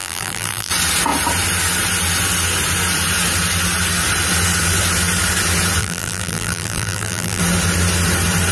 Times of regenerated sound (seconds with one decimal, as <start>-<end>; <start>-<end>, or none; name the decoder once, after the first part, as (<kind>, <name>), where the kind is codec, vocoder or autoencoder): 0.0-0.7 (vocoder, BigVGAN v2); 5.8-7.4

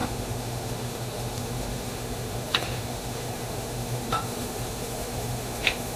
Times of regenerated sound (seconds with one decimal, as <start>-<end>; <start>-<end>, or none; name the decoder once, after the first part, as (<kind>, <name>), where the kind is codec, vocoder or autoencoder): 0.0-6.0 (autoencoder, DAC-VAE)

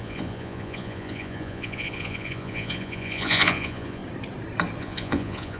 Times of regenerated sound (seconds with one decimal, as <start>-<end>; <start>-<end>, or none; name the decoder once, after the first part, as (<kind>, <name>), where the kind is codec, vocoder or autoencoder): 0.0-4.0 (vocoder, Vocos); 4.8-5.6

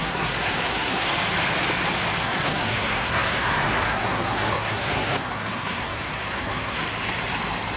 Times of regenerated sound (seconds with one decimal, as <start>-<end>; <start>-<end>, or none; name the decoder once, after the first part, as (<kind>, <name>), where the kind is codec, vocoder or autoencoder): 0.0-1.1 (codec, SNAC); 2.2-6.8

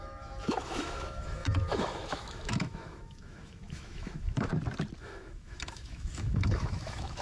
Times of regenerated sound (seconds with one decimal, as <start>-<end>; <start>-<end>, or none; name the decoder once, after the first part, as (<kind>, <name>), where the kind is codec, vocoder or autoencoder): 0.0-4.5 (autoencoder, DAC-VAE); 5.0-7.2

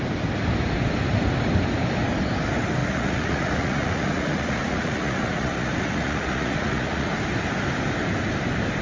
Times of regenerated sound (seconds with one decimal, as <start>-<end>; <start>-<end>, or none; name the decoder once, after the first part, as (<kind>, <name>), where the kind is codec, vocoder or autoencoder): 2.8-7.1 (vocoder, Vocos)